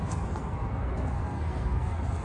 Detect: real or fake fake